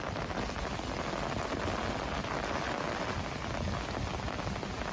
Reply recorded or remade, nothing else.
recorded